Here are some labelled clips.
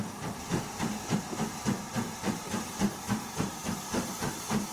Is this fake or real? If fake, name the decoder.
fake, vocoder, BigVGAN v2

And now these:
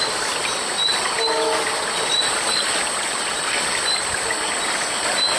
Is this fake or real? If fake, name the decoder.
real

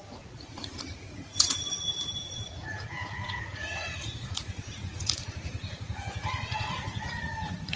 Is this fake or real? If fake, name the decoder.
fake, vocoder, Vocos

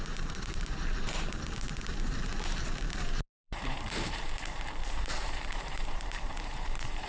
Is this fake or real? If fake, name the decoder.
fake, vocoder, BigVGAN v2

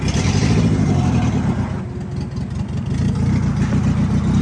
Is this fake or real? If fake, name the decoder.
real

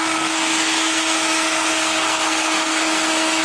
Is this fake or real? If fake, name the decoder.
fake, codec, SNAC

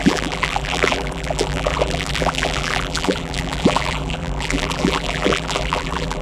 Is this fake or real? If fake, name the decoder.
fake, vocoder, BigVGAN v2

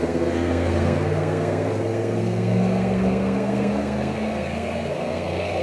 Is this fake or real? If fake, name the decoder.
fake, codec, SNAC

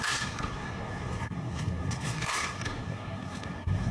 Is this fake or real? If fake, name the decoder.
fake, codec, SNAC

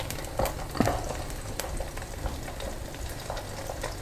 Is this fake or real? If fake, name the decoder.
real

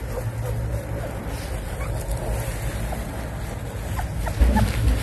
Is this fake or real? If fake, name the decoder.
real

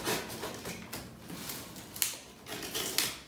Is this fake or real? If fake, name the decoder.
real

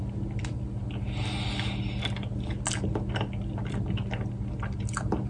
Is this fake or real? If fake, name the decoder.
real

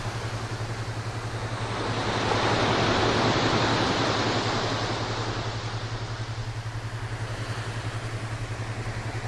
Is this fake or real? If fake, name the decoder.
real